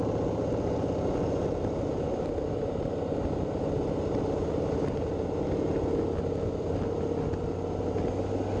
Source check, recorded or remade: recorded